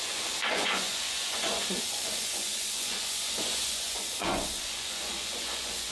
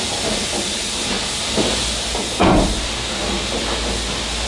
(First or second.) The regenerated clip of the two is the first